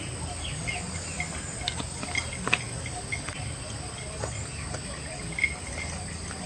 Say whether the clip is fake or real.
real